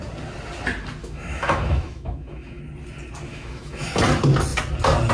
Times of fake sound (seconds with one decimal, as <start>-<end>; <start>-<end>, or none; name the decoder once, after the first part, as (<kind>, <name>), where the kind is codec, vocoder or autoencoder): 1.0-2.6 (autoencoder, DAC-VAE); 3.3-3.9